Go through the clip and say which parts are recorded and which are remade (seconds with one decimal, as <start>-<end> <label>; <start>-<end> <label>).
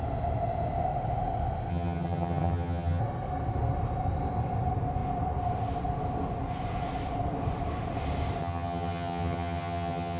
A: 0.0-1.7 recorded; 1.7-3.0 remade; 3.0-8.4 recorded; 8.4-10.2 remade